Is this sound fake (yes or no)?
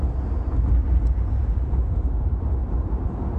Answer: no